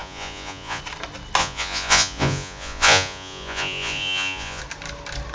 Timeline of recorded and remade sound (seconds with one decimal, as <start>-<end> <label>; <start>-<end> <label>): 0.0-0.8 remade; 0.8-1.4 recorded; 1.4-4.6 remade; 4.6-5.3 recorded